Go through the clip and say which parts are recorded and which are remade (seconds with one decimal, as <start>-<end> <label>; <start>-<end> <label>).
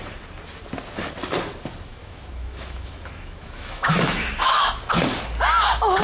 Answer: 0.0-1.9 recorded; 1.9-4.8 remade; 4.8-6.0 recorded